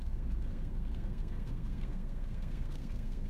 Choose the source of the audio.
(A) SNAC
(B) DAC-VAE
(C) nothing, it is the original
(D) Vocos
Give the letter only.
A